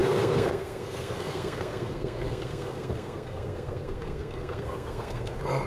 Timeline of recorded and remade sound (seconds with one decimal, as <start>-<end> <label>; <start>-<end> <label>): 0.0-5.7 remade